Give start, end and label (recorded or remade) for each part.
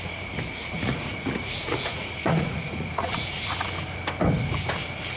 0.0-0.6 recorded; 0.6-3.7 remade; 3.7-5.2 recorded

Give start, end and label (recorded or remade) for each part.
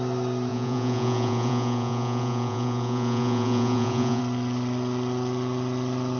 0.0-0.5 recorded; 0.5-4.2 remade; 4.2-6.2 recorded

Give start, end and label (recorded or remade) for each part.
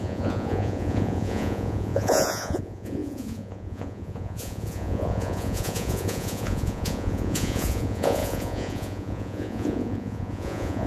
0.0-10.9 remade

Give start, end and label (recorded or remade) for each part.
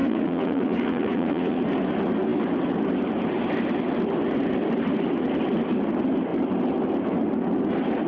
0.0-1.6 remade; 1.6-8.1 recorded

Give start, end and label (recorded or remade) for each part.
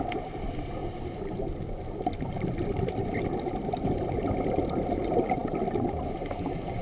0.0-6.8 recorded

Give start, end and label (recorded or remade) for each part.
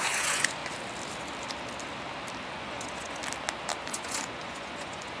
0.0-0.6 remade; 0.6-2.5 recorded; 2.5-3.2 remade; 3.2-3.9 recorded; 3.9-5.2 remade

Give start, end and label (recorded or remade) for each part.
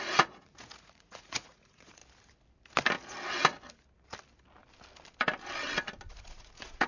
0.0-2.0 remade; 2.0-6.1 recorded; 6.1-6.9 remade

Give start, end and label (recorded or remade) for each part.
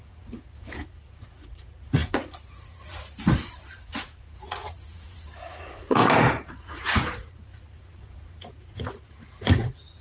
0.0-6.0 remade; 6.0-6.5 recorded; 6.5-10.0 remade